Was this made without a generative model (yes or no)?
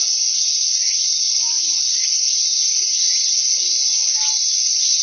yes